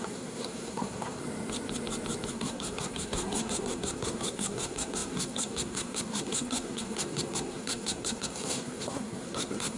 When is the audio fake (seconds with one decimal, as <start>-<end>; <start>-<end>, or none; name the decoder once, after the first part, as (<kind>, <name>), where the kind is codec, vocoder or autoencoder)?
0.0-1.2 (codec, SNAC); 2.3-9.8